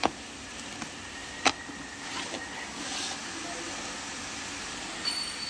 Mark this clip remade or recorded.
recorded